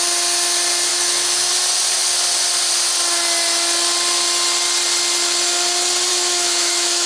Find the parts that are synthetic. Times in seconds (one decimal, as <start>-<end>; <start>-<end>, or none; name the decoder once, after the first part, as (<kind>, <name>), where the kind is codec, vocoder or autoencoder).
0.9-1.5 (autoencoder, DAC-VAE); 6.1-7.1